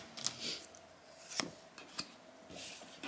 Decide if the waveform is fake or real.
real